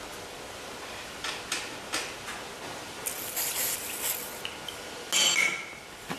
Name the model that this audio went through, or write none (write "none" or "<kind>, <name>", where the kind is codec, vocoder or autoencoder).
none